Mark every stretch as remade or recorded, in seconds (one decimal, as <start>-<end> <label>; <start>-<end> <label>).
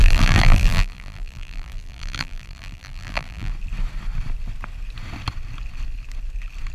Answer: 0.0-3.5 remade; 3.5-6.7 recorded